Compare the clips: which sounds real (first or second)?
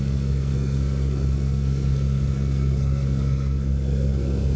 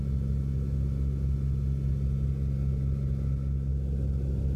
second